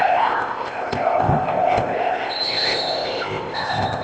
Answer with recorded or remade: remade